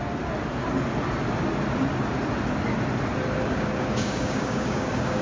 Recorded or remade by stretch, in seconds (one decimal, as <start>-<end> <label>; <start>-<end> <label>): 0.0-3.4 recorded; 3.4-5.2 remade